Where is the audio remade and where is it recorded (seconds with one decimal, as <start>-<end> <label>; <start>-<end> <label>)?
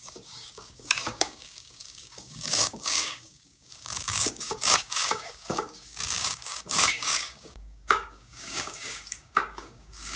0.0-10.2 remade